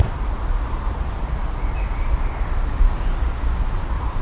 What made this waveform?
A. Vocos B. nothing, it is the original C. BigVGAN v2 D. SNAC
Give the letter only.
C